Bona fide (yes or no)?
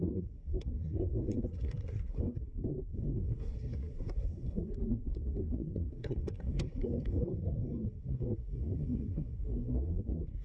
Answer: no